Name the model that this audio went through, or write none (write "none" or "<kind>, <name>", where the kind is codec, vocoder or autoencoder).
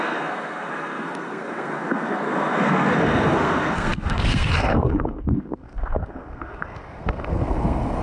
codec, SNAC